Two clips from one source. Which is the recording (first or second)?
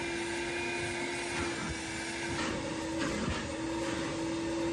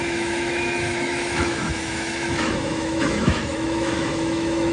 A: first